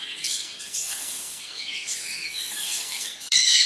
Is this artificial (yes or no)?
yes